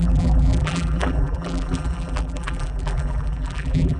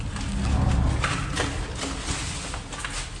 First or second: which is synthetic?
first